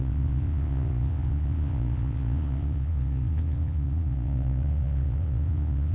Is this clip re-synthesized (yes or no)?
yes